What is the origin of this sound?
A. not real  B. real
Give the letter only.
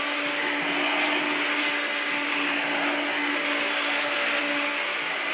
B